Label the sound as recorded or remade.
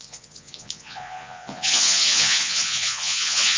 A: remade